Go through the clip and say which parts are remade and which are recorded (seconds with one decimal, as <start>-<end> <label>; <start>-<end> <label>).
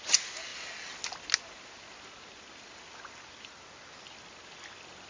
0.0-5.1 recorded